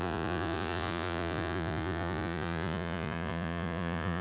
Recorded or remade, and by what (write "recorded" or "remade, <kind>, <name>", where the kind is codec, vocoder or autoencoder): remade, vocoder, Vocos